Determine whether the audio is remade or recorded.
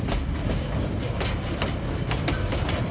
recorded